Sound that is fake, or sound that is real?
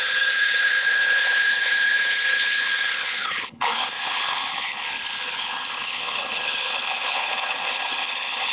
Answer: fake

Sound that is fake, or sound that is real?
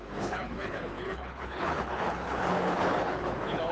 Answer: fake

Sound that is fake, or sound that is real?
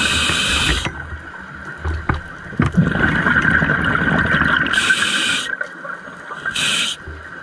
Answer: real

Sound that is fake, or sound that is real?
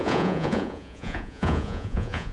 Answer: fake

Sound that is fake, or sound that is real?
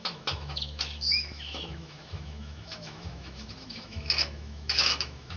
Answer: fake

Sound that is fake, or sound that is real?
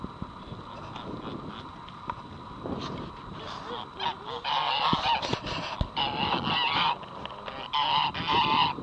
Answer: real